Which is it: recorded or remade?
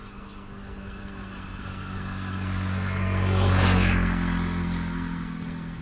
remade